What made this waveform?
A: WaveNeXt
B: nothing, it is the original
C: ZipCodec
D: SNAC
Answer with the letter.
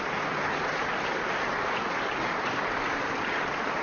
B